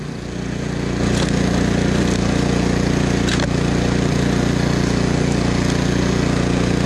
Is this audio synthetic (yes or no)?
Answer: no